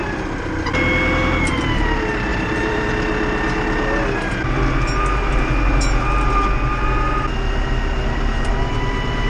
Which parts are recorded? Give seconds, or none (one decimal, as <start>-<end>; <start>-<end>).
0.0-2.3; 2.9-9.3